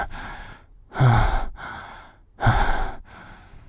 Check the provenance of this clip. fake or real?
fake